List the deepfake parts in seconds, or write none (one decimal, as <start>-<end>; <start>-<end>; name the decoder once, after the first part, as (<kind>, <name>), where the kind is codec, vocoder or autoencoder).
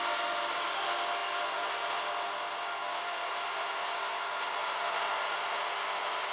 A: none